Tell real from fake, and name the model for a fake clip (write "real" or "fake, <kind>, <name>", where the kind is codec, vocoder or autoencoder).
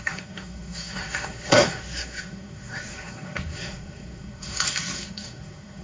fake, codec, SNAC